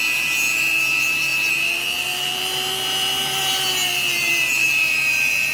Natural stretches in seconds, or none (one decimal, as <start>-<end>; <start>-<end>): none